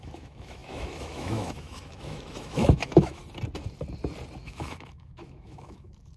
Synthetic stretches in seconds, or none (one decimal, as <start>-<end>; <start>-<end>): 0.0-3.2; 4.4-6.2